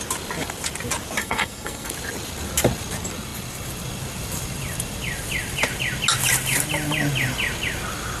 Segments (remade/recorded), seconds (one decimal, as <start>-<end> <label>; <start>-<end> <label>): 0.0-1.2 recorded; 1.2-1.9 remade; 1.9-8.2 recorded